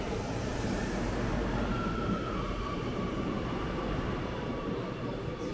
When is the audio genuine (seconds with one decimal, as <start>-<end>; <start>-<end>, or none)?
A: none